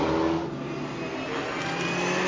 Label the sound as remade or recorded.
recorded